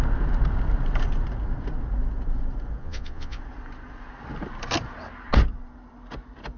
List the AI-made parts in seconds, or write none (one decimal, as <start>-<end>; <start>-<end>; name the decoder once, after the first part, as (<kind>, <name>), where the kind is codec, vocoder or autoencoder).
2.8-3.4 (vocoder, Vocos)